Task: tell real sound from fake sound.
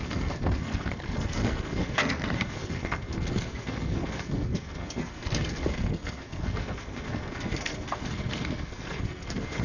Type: fake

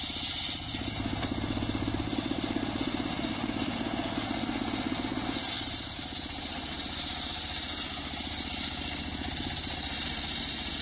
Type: real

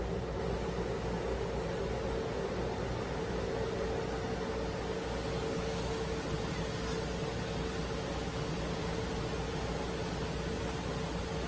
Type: real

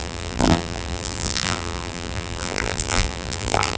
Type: fake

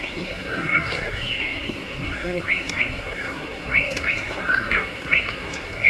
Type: fake